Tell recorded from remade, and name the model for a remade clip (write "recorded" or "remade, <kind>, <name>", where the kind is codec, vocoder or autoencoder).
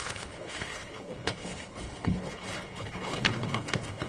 remade, codec, HILCodec